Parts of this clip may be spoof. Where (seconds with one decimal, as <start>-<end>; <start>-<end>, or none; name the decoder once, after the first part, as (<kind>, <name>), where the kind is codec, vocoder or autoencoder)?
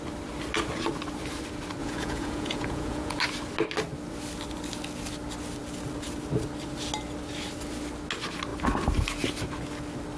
1.8-3.2 (vocoder, Vocos)